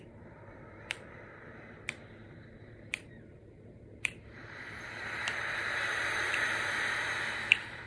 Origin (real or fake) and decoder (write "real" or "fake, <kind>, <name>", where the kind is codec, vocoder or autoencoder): fake, vocoder, BigVGAN v2